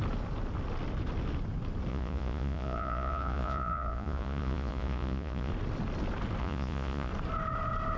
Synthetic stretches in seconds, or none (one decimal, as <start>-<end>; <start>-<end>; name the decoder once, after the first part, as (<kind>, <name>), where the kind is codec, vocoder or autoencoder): 1.9-5.5 (vocoder, Vocos); 6.4-7.1